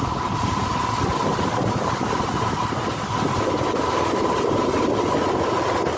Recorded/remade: recorded